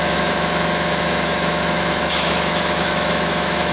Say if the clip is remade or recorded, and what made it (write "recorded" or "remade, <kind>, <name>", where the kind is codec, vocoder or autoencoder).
remade, autoencoder, DAC-VAE